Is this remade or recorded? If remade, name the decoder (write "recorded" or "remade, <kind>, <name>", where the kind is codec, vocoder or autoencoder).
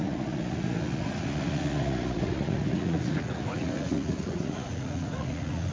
remade, vocoder, Vocos